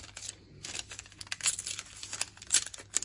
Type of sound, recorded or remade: recorded